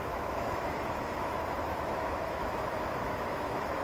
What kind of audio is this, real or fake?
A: fake